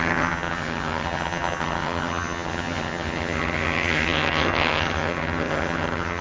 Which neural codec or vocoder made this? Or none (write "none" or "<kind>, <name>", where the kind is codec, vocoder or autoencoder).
vocoder, HiFi-GAN